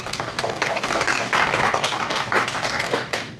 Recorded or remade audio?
remade